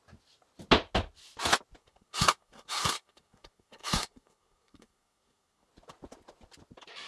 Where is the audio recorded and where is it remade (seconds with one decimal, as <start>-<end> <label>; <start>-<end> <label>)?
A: 0.0-1.8 recorded; 1.8-5.7 remade; 5.7-7.1 recorded